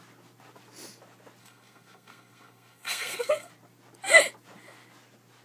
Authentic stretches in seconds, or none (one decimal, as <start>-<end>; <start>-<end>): 0.0-1.4; 3.5-5.4